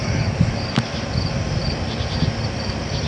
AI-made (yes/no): no